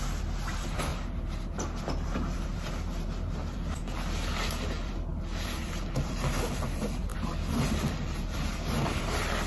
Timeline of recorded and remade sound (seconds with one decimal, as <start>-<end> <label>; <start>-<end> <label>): 0.0-0.9 remade; 0.9-1.8 recorded; 1.8-9.5 remade